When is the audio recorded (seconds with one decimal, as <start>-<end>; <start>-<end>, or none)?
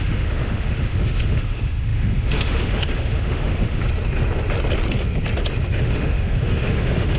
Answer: 3.8-5.7